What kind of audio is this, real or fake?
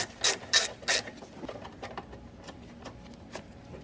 real